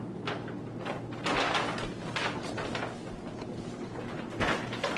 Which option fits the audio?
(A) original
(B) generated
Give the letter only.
A